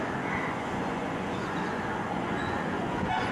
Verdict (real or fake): fake